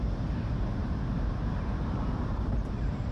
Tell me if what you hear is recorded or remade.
remade